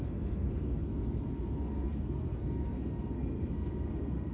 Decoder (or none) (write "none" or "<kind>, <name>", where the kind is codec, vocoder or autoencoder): codec, SNAC